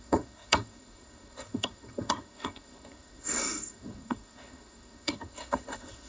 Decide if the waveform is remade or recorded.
remade